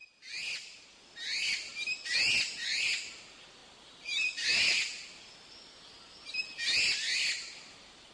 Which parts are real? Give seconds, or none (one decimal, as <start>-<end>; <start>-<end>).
0.0-8.1